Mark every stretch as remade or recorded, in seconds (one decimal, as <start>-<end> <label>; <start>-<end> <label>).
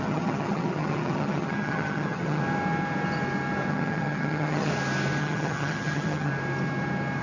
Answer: 0.0-2.4 remade; 2.4-3.7 recorded; 3.7-4.7 remade; 4.7-5.2 recorded; 5.2-6.3 remade; 6.3-7.2 recorded